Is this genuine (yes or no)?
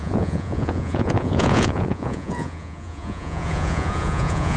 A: no